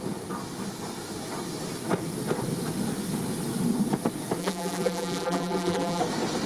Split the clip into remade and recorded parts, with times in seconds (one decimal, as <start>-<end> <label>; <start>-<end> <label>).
0.0-4.4 recorded; 4.4-6.0 remade; 6.0-6.5 recorded